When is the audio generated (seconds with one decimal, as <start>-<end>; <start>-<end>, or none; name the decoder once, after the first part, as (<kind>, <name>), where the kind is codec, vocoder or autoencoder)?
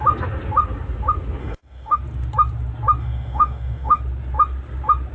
1.4-2.0 (autoencoder, DAC-VAE); 3.0-4.0